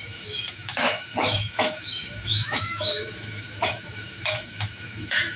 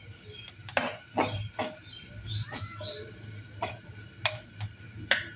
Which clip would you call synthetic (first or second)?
first